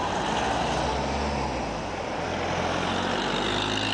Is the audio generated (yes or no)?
no